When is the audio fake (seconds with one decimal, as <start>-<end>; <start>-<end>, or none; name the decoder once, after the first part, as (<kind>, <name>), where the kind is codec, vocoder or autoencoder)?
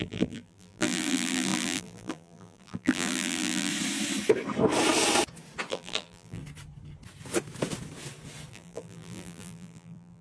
0.0-3.7 (vocoder, BigVGAN v2); 5.7-6.4; 8.5-10.2